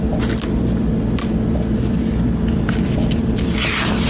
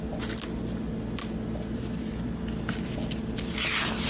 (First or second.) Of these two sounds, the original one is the second